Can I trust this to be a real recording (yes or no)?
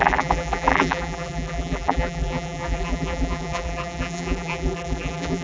no